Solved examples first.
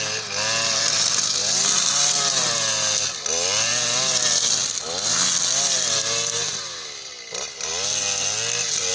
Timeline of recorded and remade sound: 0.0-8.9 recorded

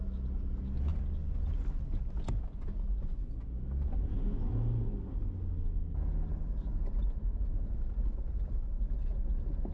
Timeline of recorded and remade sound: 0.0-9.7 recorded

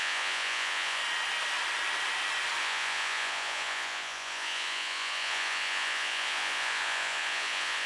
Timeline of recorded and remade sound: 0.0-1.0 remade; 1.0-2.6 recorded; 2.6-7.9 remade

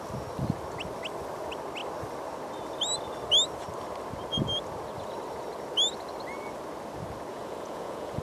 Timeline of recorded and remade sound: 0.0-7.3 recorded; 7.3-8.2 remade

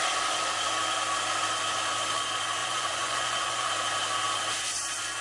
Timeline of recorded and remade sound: 0.0-2.6 recorded; 2.6-3.7 remade; 3.7-5.2 recorded

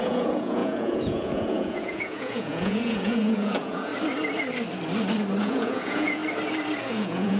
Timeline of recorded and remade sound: 0.0-3.9 remade; 3.9-5.4 recorded; 5.4-6.2 remade; 6.2-6.9 recorded; 6.9-7.4 remade

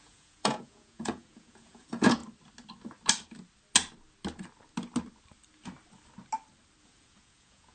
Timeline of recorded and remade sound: 0.0-2.2 remade; 2.2-6.8 recorded; 6.8-7.7 remade

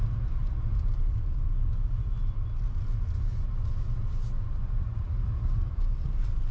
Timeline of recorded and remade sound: 0.0-6.5 recorded